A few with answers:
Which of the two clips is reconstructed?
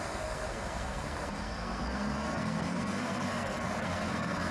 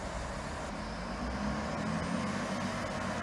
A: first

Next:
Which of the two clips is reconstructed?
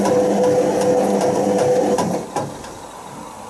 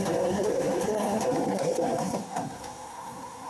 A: second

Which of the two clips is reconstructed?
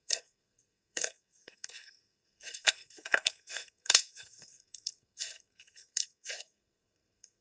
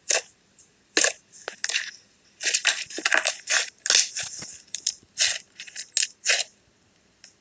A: first